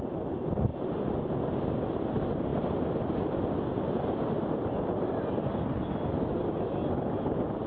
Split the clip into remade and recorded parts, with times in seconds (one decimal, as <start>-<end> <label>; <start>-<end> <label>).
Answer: 0.0-0.7 recorded; 0.7-1.3 remade; 1.3-2.5 recorded; 2.5-3.6 remade; 3.6-7.7 recorded